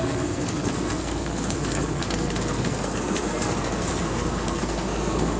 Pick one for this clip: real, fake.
fake